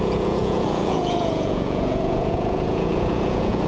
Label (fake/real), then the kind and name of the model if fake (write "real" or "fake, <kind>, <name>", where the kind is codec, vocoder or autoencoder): fake, vocoder, Vocos